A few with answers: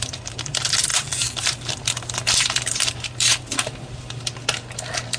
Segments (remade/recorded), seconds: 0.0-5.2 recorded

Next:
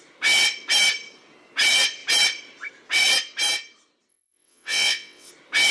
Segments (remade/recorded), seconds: 0.0-4.1 recorded; 4.1-5.3 remade; 5.3-5.7 recorded

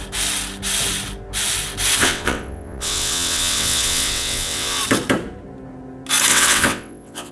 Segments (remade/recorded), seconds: 0.0-2.0 recorded; 2.0-4.8 remade; 4.8-6.3 recorded; 6.3-7.3 remade